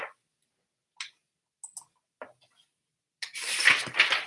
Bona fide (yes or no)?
yes